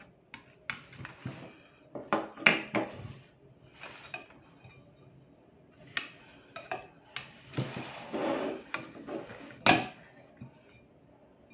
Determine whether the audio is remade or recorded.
recorded